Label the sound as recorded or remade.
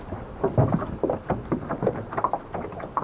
recorded